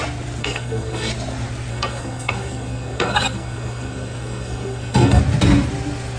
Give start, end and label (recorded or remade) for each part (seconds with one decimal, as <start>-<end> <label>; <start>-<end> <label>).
0.0-0.4 recorded; 0.4-1.1 remade; 1.1-1.7 recorded; 1.7-5.2 remade; 5.2-6.2 recorded